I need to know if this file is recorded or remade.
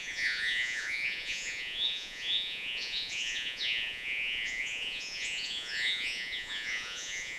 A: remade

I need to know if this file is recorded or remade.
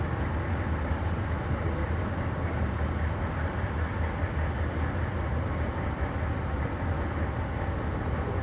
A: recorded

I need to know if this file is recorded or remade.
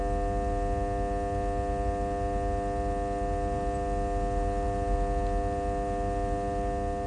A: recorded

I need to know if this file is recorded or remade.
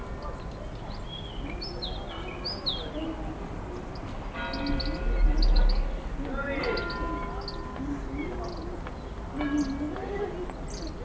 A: recorded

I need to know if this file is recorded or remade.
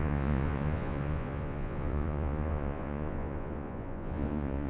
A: remade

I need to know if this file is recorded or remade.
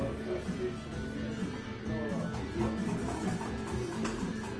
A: recorded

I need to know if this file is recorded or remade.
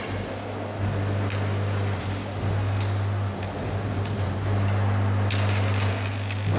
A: recorded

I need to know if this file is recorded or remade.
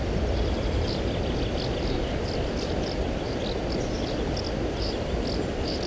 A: recorded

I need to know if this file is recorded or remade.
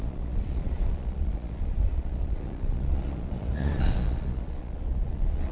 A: remade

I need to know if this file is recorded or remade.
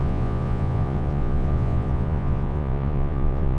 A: remade